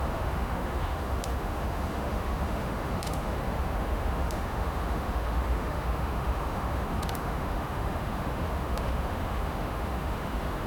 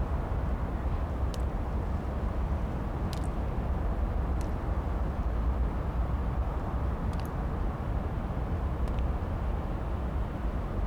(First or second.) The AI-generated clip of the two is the first